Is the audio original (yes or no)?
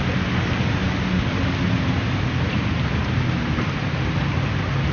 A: yes